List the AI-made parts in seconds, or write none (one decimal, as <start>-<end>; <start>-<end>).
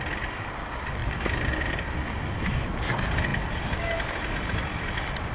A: none